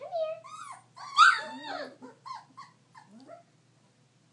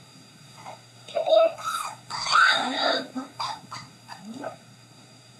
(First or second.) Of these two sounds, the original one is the first